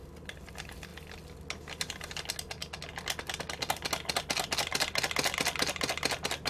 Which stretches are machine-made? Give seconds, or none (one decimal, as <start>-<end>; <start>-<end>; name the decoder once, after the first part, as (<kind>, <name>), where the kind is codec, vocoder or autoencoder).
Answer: none